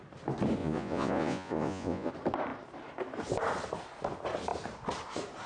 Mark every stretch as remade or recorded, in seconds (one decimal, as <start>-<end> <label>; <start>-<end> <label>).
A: 0.0-0.6 recorded; 0.6-2.1 remade; 2.1-5.5 recorded